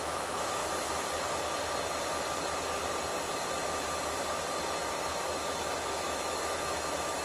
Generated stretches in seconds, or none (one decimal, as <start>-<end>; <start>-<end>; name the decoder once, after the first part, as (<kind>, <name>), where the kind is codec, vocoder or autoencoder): 0.0-0.6 (autoencoder, DAC-VAE); 4.9-7.2